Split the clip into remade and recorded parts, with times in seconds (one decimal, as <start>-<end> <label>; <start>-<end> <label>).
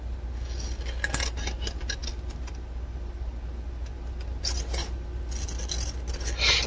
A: 0.0-6.7 recorded